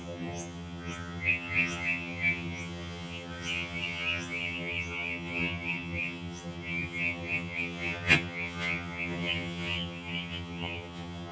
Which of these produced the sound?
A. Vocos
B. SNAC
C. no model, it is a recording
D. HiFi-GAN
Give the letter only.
D